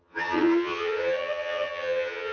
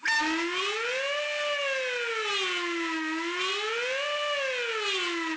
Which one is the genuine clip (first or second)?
second